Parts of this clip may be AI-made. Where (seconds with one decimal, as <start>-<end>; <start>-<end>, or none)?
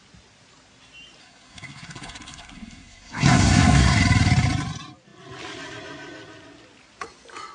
1.2-4.0